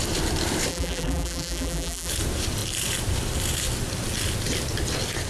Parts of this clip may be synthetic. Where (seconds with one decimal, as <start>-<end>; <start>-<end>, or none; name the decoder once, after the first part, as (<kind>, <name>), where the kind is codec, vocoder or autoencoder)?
0.7-2.1 (vocoder, BigVGAN v2)